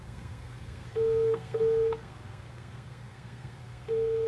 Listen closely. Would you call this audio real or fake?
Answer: fake